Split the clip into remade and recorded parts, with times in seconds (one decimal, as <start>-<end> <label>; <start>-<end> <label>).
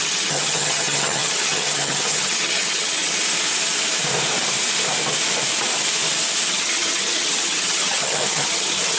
0.0-3.2 remade; 3.2-6.5 recorded; 6.5-9.0 remade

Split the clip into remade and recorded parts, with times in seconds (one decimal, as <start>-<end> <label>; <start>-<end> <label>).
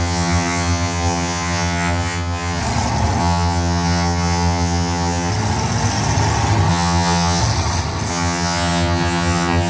0.0-2.6 remade; 2.6-3.2 recorded; 3.2-5.3 remade; 5.3-6.7 recorded; 6.7-7.4 remade; 7.4-8.1 recorded; 8.1-9.7 remade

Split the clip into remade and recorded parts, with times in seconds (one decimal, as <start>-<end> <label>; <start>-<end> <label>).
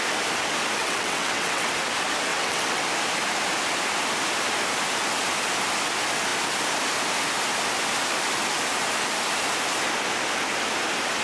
0.0-0.8 recorded; 0.8-1.7 remade; 1.7-2.3 recorded; 2.3-2.8 remade; 2.8-11.2 recorded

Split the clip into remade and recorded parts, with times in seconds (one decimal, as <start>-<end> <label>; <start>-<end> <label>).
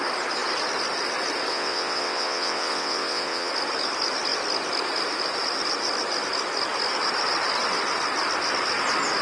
0.0-1.5 recorded; 1.5-3.5 remade; 3.5-9.2 recorded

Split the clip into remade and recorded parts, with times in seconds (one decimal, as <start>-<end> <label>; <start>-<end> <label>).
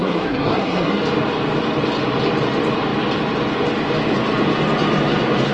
0.0-1.0 remade; 1.0-5.5 recorded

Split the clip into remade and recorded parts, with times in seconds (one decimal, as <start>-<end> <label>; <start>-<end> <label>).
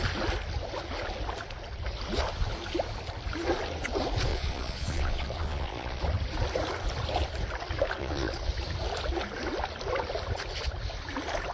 0.0-4.3 recorded; 4.3-6.0 remade; 6.0-8.0 recorded; 8.0-8.5 remade; 8.5-11.5 recorded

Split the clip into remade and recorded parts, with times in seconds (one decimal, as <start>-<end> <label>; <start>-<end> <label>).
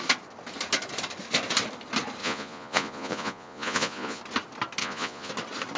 0.0-2.2 recorded; 2.2-4.2 remade; 4.2-4.8 recorded; 4.8-5.3 remade; 5.3-5.8 recorded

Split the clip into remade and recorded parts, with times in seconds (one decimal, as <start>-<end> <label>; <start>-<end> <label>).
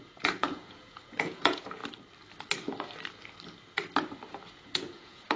0.0-1.8 remade; 1.8-4.5 recorded; 4.5-5.4 remade